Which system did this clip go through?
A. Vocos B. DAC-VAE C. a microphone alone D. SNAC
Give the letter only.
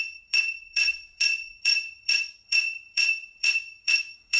A